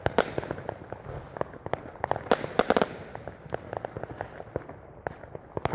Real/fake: real